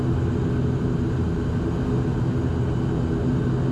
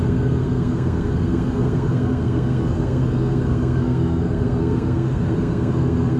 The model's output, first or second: second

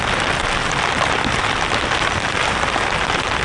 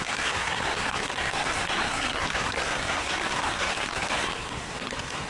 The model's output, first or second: second